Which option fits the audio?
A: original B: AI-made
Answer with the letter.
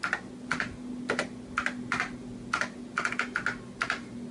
A